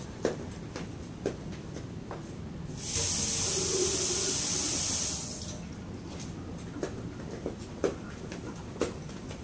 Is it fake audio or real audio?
real